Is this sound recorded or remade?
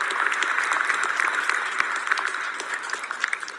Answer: recorded